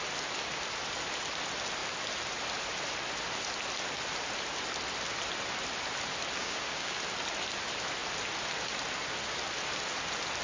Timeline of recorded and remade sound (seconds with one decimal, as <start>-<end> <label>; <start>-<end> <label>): 0.0-6.4 recorded; 6.4-7.0 remade; 7.0-10.4 recorded

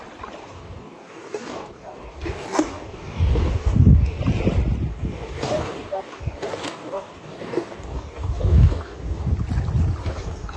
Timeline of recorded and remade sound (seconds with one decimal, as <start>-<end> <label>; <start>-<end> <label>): 0.0-0.4 recorded; 0.4-4.2 remade; 4.2-4.9 recorded; 4.9-9.3 remade; 9.3-10.0 recorded; 10.0-10.6 remade

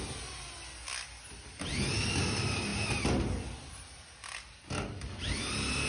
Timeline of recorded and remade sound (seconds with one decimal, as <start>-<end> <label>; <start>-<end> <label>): 0.0-5.9 recorded

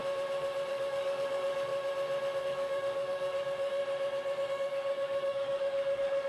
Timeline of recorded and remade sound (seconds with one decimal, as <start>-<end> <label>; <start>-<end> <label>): 0.0-0.7 recorded; 0.7-1.7 remade; 1.7-2.4 recorded; 2.4-3.8 remade; 3.8-4.5 recorded; 4.5-6.3 remade

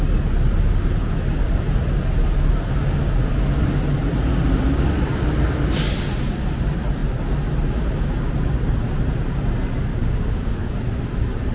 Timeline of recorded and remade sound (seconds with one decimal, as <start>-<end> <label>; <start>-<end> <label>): 0.0-9.9 recorded; 9.9-10.7 remade; 10.7-11.5 recorded

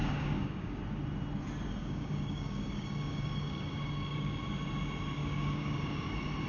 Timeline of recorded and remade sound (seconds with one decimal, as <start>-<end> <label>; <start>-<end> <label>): 0.0-0.8 remade; 0.8-1.8 recorded; 1.8-4.4 remade; 4.4-5.2 recorded; 5.2-6.1 remade; 6.1-6.5 recorded

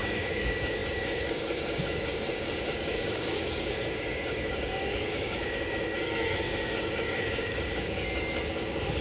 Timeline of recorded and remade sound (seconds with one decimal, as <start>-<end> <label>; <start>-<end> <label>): 0.0-9.0 remade